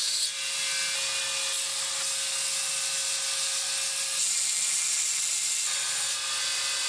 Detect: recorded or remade recorded